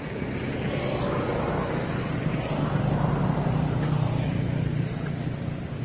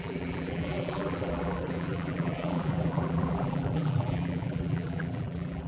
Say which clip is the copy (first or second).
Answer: second